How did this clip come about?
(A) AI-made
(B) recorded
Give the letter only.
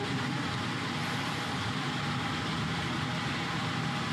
B